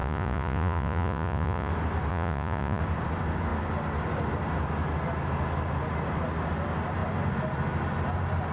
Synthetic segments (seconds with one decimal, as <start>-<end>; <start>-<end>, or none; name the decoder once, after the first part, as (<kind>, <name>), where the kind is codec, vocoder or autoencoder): 0.0-1.7 (vocoder, Vocos); 2.1-2.8